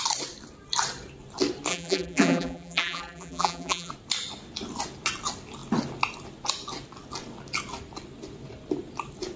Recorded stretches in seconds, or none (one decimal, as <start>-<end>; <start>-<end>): 0.0-1.7; 3.9-9.4